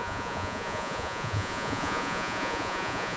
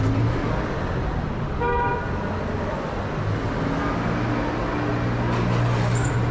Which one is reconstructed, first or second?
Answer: first